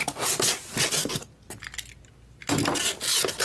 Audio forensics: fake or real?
real